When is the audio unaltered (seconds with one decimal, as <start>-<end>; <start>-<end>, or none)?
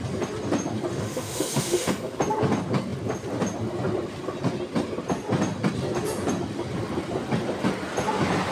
0.0-0.9; 1.9-8.5